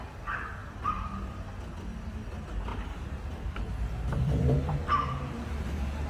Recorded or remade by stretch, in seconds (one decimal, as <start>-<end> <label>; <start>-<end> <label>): 0.0-0.6 recorded; 0.6-1.1 remade; 1.1-2.7 recorded; 2.7-6.1 remade

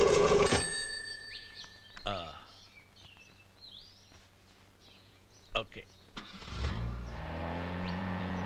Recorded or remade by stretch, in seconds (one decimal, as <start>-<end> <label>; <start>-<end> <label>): 0.0-1.8 remade; 1.8-4.8 recorded; 4.8-6.4 remade; 6.4-7.4 recorded; 7.4-8.5 remade

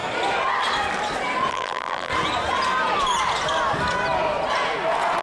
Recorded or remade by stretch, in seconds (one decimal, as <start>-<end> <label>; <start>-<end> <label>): 0.0-1.5 recorded; 1.5-2.1 remade; 2.1-5.2 recorded

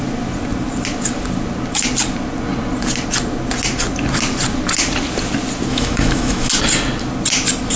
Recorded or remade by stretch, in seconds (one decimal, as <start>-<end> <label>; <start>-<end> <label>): 0.0-5.7 recorded; 5.7-6.5 remade; 6.5-7.8 recorded